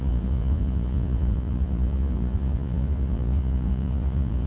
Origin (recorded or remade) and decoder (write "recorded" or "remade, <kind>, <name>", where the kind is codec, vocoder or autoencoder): remade, vocoder, Vocos